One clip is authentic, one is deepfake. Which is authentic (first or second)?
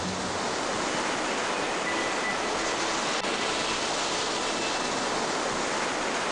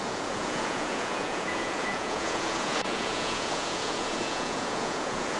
first